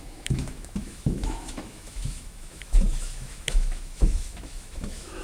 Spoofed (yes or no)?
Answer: yes